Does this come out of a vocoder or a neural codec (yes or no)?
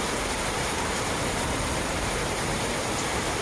yes